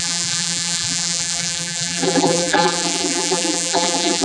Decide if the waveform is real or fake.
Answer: fake